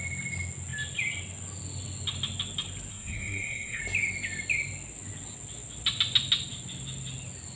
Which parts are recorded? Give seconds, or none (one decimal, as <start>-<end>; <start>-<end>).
0.0-2.9; 3.8-7.6